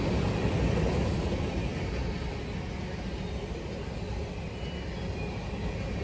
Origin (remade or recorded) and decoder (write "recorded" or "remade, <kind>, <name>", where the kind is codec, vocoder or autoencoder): recorded